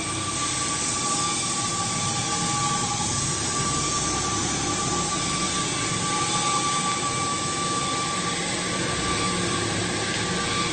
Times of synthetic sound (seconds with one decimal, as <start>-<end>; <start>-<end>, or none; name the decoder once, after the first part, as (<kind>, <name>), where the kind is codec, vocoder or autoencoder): 7.3-7.8 (autoencoder, DAC-VAE)